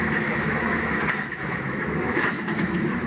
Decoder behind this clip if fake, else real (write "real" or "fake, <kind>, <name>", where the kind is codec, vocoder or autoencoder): fake, autoencoder, DAC-VAE